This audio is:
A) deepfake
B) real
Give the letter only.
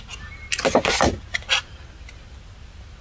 B